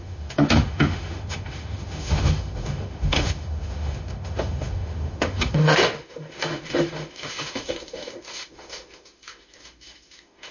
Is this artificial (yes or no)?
yes